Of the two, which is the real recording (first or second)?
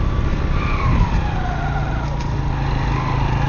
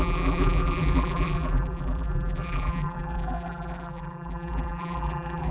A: first